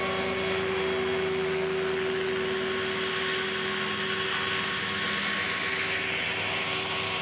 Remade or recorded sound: recorded